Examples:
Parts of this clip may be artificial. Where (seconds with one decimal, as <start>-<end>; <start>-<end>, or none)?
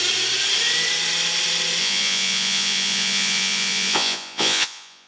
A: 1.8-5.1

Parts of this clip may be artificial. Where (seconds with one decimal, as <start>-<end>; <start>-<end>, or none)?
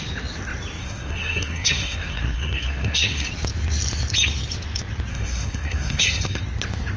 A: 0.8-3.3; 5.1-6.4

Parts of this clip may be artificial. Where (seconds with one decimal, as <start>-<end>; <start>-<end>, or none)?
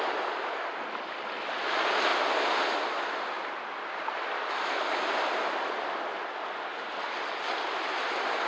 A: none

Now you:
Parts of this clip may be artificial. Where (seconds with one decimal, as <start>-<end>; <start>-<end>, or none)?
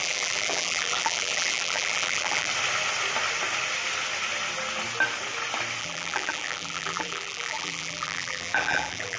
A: 0.0-2.5; 5.8-9.2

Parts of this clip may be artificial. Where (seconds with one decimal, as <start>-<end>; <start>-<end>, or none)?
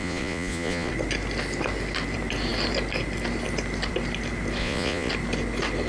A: 0.0-0.9; 4.6-5.1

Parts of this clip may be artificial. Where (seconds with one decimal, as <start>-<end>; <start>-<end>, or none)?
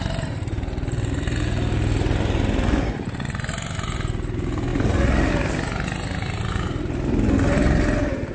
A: none